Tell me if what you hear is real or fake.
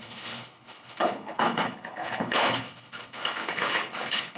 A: fake